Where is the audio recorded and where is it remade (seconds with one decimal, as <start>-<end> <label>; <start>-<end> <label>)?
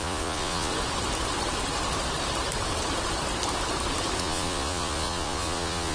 0.0-0.7 remade; 0.7-4.2 recorded; 4.2-5.9 remade